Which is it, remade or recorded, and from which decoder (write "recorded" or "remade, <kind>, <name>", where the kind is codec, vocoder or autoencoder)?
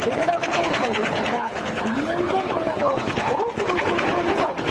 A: remade, codec, HILCodec